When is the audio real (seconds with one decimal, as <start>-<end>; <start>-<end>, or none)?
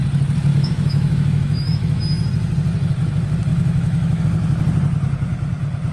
0.0-0.5; 2.0-3.5; 4.2-5.9